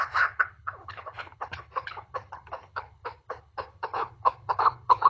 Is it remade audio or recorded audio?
remade